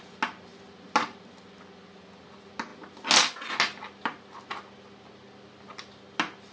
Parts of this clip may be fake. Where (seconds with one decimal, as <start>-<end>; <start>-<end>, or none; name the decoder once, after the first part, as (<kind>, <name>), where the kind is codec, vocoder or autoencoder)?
none